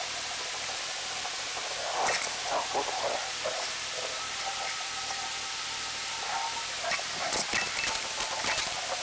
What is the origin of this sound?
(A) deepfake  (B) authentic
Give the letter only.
B